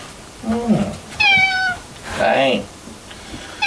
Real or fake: real